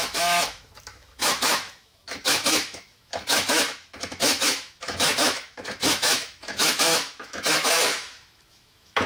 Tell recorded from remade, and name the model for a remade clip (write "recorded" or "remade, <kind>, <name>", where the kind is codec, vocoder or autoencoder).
remade, autoencoder, DAC-VAE